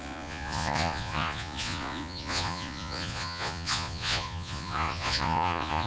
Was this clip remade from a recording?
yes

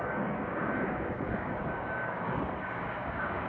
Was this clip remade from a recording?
yes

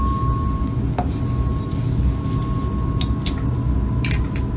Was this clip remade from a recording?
no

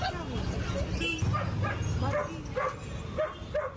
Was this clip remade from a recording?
no